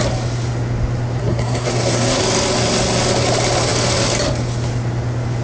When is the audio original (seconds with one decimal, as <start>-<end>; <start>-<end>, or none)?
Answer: 0.0-1.2; 2.2-5.4

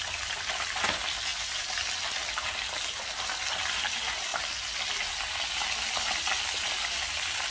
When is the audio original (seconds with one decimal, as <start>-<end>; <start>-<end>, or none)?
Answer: 0.0-7.5

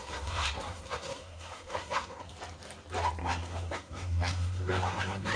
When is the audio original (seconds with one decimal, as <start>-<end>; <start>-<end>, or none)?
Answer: 2.3-3.2

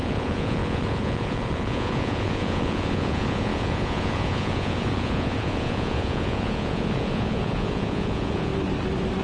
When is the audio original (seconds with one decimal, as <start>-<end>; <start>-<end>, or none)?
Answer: 8.5-9.2

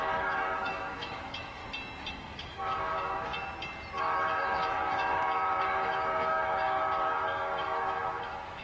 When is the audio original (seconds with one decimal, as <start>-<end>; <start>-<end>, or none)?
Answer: 1.6-2.1; 3.3-4.0

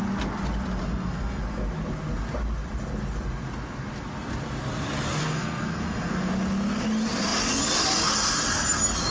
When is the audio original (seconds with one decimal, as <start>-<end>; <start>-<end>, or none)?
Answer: 0.0-0.8; 1.4-5.2; 6.3-9.1